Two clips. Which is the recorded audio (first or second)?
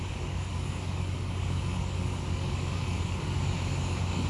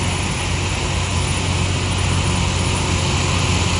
second